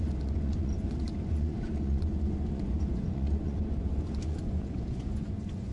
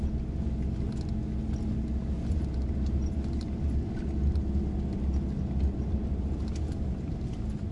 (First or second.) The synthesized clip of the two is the first